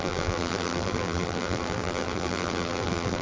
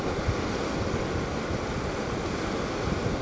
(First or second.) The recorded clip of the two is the second